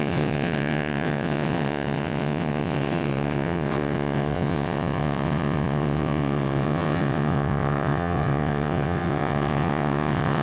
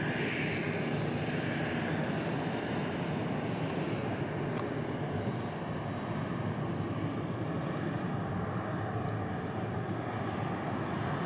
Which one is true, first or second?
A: second